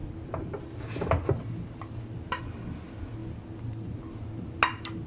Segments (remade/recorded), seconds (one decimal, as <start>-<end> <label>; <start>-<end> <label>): 0.0-5.1 recorded